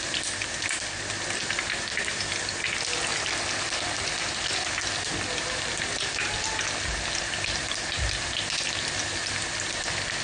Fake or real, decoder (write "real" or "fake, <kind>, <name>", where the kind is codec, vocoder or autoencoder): real